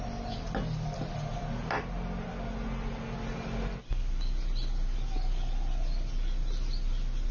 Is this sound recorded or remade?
recorded